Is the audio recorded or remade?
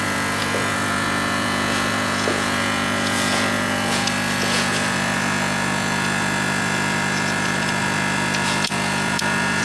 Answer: remade